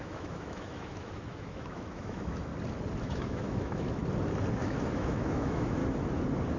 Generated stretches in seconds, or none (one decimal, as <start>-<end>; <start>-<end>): 0.0-2.5; 3.0-4.0; 4.6-5.8